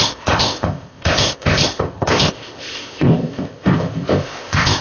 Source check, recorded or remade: remade